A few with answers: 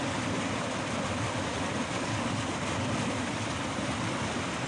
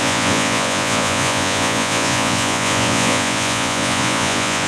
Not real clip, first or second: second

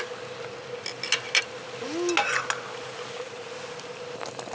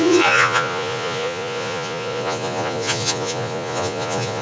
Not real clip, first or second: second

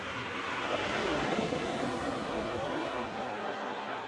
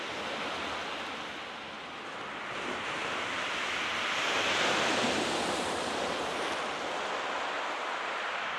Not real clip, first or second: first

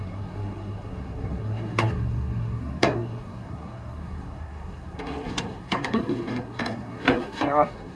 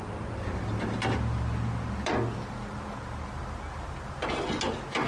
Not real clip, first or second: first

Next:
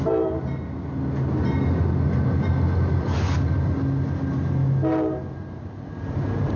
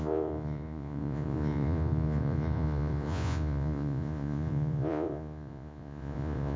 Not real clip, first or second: second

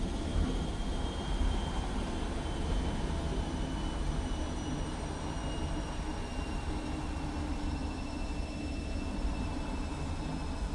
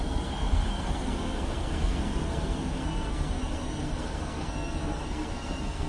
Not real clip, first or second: second